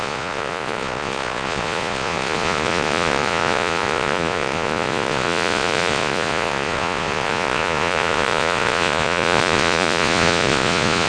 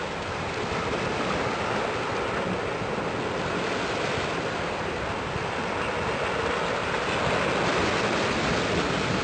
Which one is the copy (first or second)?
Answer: first